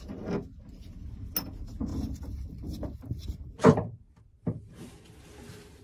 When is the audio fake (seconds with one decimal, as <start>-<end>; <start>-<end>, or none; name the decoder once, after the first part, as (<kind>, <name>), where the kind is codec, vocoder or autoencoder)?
1.9-5.0 (vocoder, BigVGAN v2)